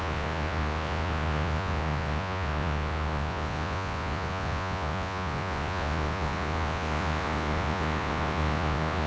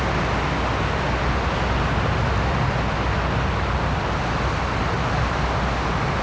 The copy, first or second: first